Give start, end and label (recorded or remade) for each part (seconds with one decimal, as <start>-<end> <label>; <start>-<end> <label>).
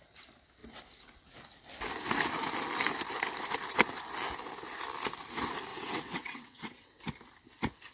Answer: 0.0-5.7 recorded; 5.7-7.0 remade; 7.0-7.9 recorded